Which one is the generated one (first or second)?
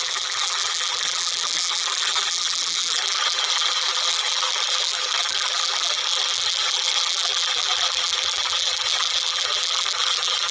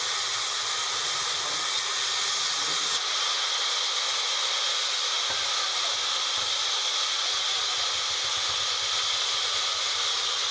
first